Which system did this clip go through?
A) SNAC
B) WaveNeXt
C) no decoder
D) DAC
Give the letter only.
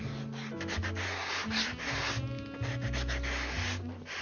C